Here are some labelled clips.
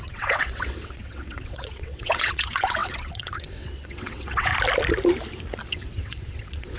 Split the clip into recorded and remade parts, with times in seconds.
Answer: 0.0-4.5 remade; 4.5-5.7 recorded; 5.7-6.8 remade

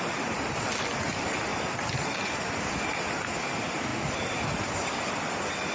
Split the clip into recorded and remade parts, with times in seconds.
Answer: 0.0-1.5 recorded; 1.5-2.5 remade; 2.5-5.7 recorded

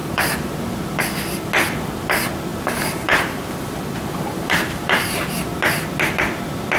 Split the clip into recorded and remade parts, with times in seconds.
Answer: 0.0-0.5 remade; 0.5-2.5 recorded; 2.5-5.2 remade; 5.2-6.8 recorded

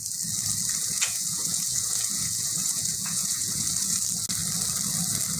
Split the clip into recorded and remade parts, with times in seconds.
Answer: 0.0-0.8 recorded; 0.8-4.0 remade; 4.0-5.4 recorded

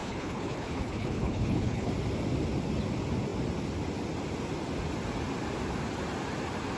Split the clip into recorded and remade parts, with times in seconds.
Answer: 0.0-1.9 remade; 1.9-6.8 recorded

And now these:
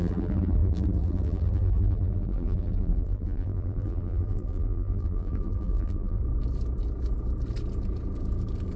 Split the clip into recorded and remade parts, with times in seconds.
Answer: 0.0-6.2 remade; 6.2-8.8 recorded

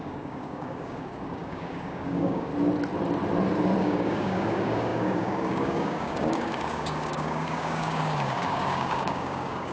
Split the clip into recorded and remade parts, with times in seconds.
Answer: 0.0-2.5 remade; 2.5-3.8 recorded; 3.8-9.7 remade

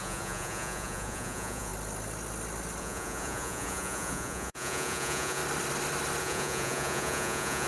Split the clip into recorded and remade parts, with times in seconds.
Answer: 0.0-1.7 remade; 1.7-2.8 recorded; 2.8-5.4 remade; 5.4-6.2 recorded; 6.2-7.7 remade